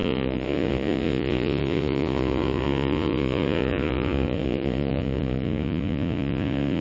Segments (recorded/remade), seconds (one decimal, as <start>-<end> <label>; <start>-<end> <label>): 0.0-6.8 remade